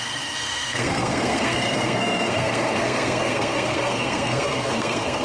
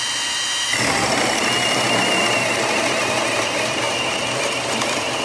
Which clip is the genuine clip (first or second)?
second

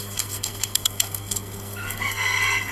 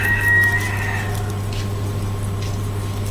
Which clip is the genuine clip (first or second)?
second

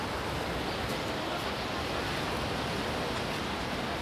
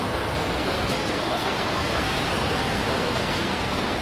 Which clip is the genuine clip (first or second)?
first